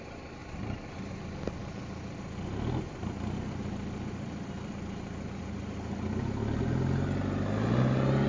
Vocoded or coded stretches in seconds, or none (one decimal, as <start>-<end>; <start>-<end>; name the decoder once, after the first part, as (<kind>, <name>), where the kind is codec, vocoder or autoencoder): none